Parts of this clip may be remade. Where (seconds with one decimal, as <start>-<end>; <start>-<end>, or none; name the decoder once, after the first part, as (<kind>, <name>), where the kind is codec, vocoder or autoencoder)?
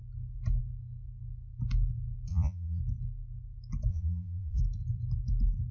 2.3-2.8 (vocoder, Vocos); 3.9-4.6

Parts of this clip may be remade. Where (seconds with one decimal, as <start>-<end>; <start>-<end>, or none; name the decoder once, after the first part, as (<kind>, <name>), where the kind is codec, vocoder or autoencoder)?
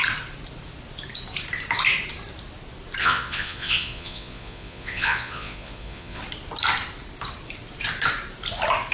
3.0-6.2 (vocoder, Vocos)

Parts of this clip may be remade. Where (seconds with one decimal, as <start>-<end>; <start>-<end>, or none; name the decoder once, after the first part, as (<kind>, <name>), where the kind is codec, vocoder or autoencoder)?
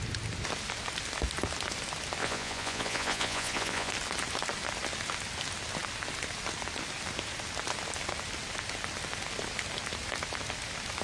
2.2-3.9 (vocoder, Vocos)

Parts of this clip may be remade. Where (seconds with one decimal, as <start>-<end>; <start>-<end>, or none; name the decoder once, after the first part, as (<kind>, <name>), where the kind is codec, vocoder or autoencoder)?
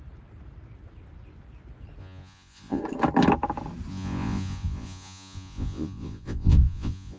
2.0-2.8 (vocoder, Vocos); 3.9-7.2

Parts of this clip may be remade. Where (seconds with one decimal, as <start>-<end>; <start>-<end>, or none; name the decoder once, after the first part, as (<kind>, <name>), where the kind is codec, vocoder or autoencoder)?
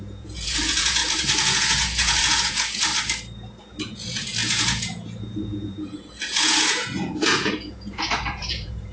0.0-2.9 (vocoder, Vocos); 3.6-8.9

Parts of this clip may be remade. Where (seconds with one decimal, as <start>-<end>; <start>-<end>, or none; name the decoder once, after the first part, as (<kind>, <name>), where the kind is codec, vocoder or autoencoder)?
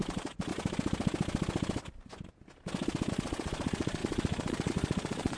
0.0-0.5 (vocoder, Vocos); 3.1-5.4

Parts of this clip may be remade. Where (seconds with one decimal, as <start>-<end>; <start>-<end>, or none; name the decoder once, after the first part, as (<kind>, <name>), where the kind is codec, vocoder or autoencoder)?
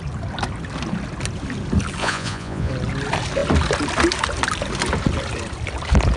2.0-2.7 (vocoder, Vocos)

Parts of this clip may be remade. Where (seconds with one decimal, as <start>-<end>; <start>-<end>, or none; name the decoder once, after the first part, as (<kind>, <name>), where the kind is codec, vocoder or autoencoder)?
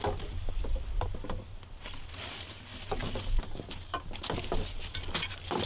none